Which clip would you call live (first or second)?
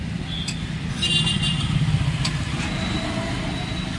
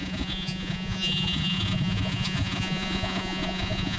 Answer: first